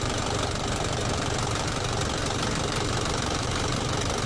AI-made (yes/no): yes